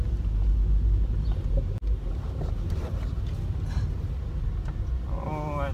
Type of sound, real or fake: real